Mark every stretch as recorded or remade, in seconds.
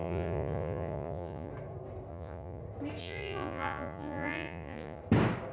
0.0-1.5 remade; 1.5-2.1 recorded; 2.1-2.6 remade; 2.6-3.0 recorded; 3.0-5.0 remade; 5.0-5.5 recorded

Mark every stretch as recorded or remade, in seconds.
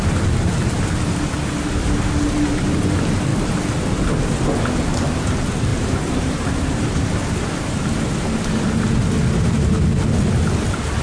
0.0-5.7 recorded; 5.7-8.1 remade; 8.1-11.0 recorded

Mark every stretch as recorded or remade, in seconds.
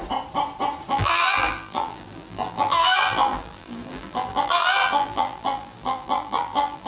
0.0-0.9 recorded; 0.9-6.9 remade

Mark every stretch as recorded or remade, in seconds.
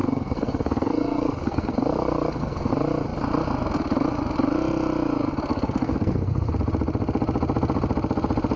0.0-2.7 remade; 2.7-5.5 recorded; 5.5-6.5 remade; 6.5-8.6 recorded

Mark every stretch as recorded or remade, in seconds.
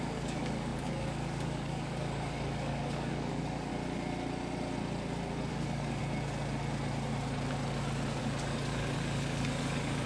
0.0-3.7 remade; 3.7-5.5 recorded; 5.5-6.0 remade; 6.0-8.2 recorded; 8.2-10.1 remade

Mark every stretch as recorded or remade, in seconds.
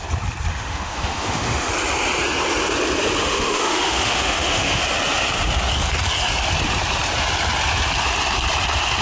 0.0-0.5 recorded; 0.5-1.7 remade; 1.7-3.2 recorded; 3.2-4.8 remade; 4.8-9.0 recorded